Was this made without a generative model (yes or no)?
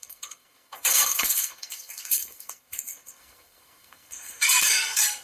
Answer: no